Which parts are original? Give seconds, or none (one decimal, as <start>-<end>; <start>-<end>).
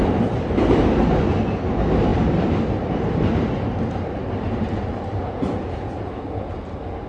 0.0-5.2; 6.6-7.1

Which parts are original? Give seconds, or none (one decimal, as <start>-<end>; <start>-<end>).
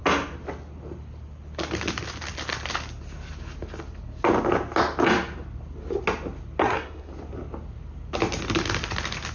0.0-6.6; 7.1-9.3